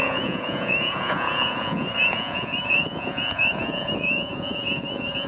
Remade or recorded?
remade